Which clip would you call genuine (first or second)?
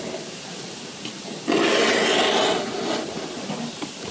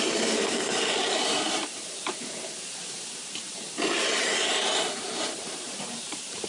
first